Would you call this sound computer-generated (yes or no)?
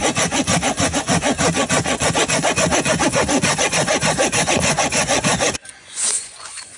yes